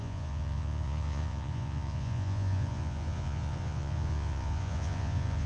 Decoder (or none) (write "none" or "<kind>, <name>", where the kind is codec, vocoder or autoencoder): vocoder, Vocos